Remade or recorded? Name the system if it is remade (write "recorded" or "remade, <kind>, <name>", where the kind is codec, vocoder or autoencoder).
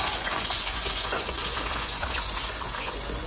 remade, vocoder, Vocos